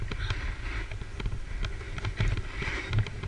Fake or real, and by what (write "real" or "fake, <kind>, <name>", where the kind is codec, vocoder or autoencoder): real